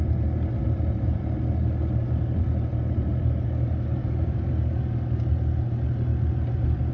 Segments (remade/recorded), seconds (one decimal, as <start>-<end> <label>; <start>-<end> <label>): 0.0-0.6 recorded; 0.6-1.2 remade; 1.2-2.0 recorded; 2.0-3.2 remade; 3.2-3.9 recorded; 3.9-4.5 remade; 4.5-6.9 recorded